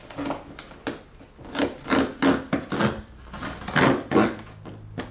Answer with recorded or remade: recorded